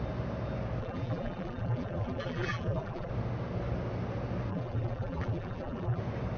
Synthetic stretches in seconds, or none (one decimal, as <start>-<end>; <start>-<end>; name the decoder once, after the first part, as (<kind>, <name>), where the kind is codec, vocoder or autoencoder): 0.8-3.1 (vocoder, BigVGAN v2); 4.5-6.0